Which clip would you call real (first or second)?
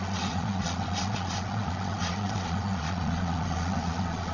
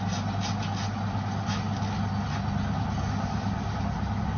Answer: second